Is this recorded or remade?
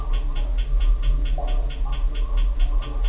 recorded